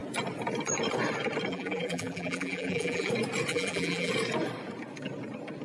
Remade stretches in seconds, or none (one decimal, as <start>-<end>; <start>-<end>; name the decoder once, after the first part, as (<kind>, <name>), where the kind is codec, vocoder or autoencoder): 1.5-3.1 (vocoder, BigVGAN v2); 3.5-4.1